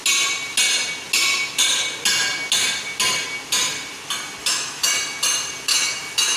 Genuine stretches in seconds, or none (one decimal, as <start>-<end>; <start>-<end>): 0.0-4.4; 4.9-5.7